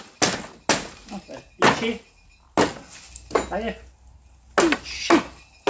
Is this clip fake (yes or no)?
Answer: no